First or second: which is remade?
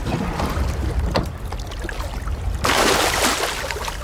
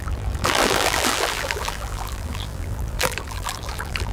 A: second